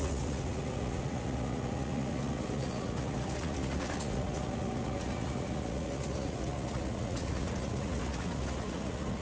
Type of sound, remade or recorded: remade